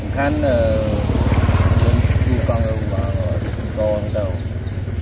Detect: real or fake real